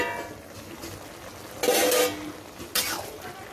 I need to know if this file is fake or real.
real